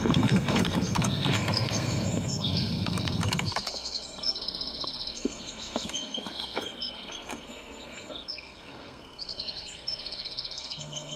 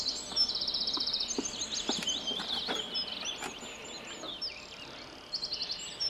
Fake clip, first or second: first